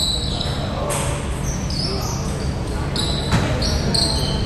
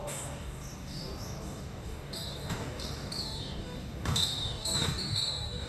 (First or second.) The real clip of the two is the first